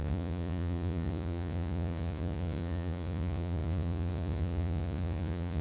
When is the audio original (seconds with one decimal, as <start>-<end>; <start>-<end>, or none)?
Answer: none

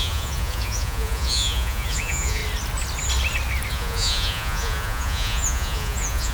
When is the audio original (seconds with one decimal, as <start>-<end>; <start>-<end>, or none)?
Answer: 2.4-3.7

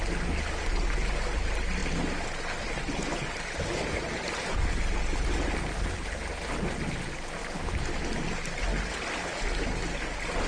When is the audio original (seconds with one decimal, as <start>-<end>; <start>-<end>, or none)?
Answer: 0.0-10.5